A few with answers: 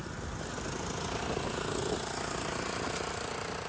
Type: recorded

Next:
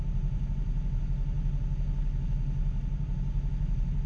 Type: recorded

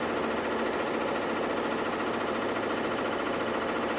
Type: recorded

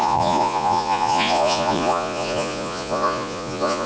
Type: remade